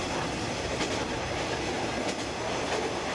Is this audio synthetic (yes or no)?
no